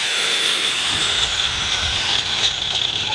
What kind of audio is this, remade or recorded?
remade